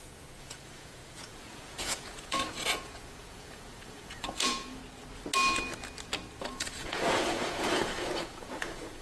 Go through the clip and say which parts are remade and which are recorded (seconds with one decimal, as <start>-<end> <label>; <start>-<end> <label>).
0.0-4.8 remade; 4.8-6.4 recorded; 6.4-9.0 remade